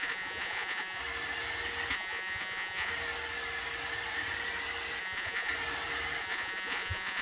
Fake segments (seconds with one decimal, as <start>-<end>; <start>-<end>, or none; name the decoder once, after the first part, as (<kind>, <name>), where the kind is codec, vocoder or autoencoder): 0.0-1.0 (vocoder, Vocos); 1.9-2.9; 5.0-5.5; 6.2-7.2